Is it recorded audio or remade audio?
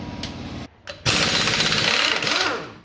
recorded